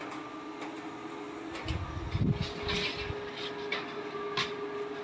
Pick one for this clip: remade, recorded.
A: recorded